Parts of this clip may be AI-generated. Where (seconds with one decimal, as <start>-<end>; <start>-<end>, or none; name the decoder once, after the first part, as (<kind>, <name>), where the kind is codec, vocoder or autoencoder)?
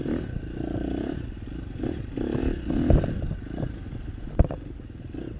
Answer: none